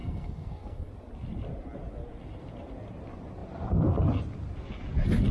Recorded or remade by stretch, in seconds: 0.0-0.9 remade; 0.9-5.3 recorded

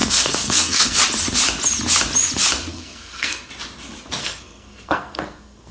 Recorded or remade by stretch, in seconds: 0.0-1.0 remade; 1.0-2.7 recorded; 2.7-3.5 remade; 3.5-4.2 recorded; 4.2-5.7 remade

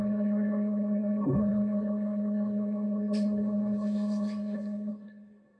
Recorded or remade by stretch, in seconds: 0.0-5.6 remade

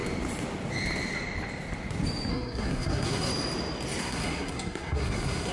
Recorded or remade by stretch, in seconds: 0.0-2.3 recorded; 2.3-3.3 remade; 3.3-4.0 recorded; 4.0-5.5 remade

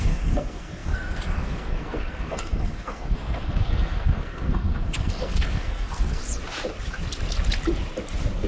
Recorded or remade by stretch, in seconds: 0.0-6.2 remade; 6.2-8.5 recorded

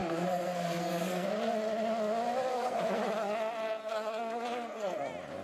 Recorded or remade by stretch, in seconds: 0.0-1.3 remade; 1.3-2.5 recorded; 2.5-3.1 remade; 3.1-3.8 recorded; 3.8-5.0 remade; 5.0-5.4 recorded

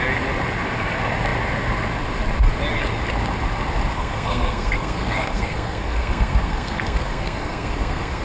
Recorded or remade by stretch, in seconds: 0.0-3.9 recorded; 3.9-8.2 remade

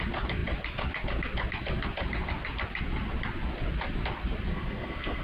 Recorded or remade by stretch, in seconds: 0.0-4.5 recorded; 4.5-5.2 remade